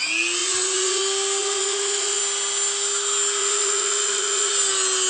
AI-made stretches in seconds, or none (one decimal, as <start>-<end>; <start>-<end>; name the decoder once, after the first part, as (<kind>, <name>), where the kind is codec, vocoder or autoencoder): 0.4-1.0 (vocoder, Vocos); 1.4-2.2; 3.4-4.5